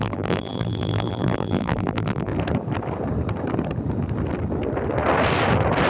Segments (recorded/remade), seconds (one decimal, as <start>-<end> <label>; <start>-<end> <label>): 0.0-2.3 remade; 2.3-5.9 recorded